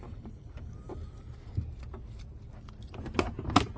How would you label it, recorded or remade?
recorded